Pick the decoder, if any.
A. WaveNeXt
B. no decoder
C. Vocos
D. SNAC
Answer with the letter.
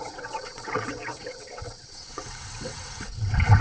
A